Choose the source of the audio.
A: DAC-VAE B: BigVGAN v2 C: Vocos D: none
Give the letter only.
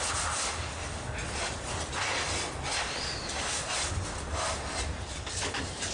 D